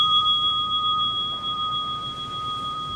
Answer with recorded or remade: remade